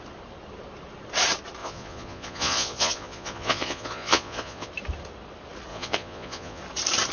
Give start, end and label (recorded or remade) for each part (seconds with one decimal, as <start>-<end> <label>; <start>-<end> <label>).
0.0-1.6 recorded; 1.6-4.7 remade; 4.7-5.7 recorded; 5.7-6.6 remade; 6.6-7.1 recorded